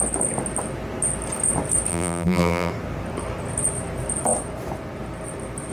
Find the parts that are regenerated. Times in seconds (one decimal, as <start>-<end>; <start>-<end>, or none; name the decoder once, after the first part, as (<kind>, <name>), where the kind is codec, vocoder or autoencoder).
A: 1.9-2.7 (vocoder, BigVGAN v2)